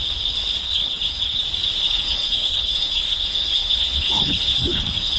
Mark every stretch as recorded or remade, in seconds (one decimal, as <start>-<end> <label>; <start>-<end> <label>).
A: 0.0-0.6 recorded; 0.6-1.4 remade; 1.4-1.8 recorded; 1.8-5.2 remade

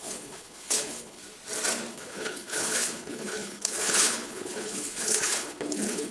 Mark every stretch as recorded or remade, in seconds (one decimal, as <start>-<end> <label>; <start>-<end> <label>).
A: 0.0-1.2 remade; 1.2-1.9 recorded; 1.9-6.1 remade

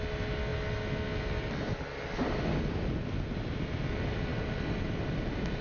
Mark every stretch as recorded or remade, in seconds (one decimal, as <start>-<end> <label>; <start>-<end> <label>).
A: 0.0-5.6 recorded